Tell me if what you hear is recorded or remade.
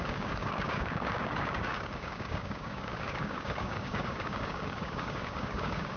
remade